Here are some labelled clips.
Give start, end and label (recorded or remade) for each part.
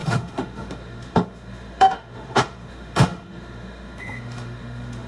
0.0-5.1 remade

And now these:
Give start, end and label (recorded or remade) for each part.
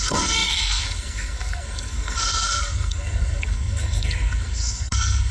0.0-5.3 remade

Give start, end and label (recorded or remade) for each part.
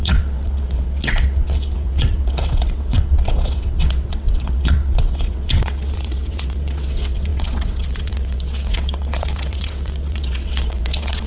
0.0-11.3 remade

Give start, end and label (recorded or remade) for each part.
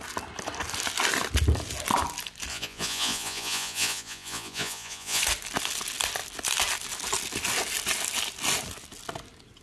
0.0-2.5 recorded; 2.5-5.2 remade; 5.2-9.6 recorded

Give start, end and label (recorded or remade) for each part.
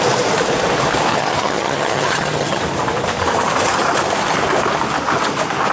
0.0-1.1 recorded; 1.1-2.6 remade; 2.6-5.7 recorded